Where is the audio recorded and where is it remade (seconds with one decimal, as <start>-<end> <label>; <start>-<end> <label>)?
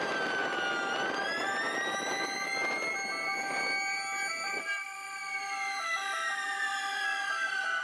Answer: 0.0-0.4 remade; 0.4-4.3 recorded; 4.3-7.8 remade